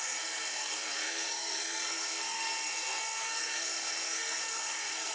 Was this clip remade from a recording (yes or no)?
yes